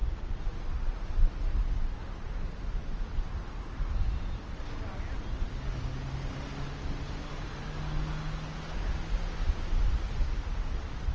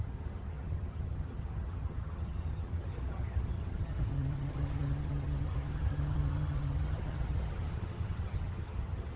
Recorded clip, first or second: first